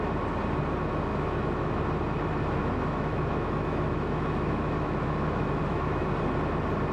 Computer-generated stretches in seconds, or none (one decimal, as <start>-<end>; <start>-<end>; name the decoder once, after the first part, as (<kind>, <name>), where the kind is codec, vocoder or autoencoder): 1.1-1.8 (autoencoder, DAC-VAE); 2.6-6.1